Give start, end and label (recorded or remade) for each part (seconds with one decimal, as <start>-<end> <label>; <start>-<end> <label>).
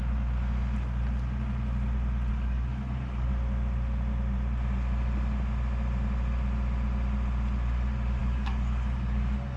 0.0-2.3 recorded; 2.3-3.3 remade; 3.3-8.2 recorded; 8.2-9.6 remade